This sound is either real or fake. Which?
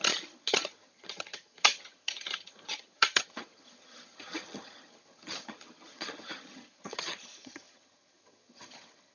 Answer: fake